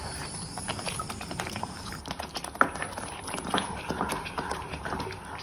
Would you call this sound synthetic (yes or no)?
yes